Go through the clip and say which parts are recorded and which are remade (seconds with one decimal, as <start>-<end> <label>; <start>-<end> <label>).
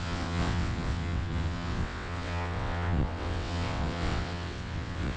0.0-5.2 remade